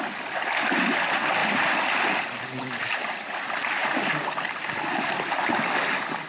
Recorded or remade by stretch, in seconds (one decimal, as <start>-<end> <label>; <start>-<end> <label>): 0.0-1.4 recorded; 1.4-2.9 remade; 2.9-3.8 recorded; 3.8-4.5 remade; 4.5-6.3 recorded